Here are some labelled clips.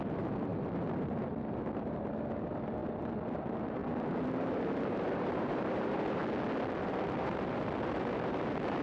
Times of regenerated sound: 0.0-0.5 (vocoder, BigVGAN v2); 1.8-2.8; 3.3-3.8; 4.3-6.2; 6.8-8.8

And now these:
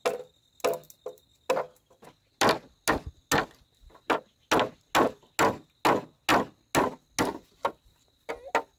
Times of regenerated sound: none

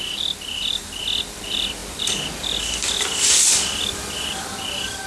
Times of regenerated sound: 0.0-5.1 (vocoder, BigVGAN v2)

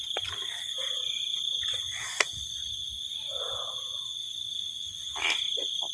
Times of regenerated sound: none

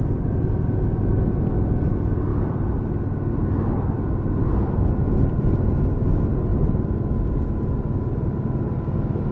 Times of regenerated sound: none

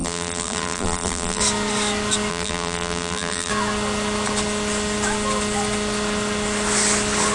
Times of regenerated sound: 0.0-1.4 (vocoder, BigVGAN v2); 2.3-3.5